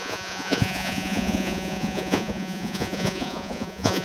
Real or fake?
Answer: fake